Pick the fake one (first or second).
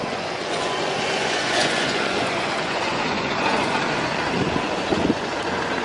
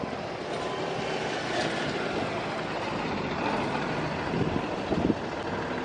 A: first